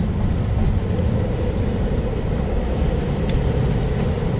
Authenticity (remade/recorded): remade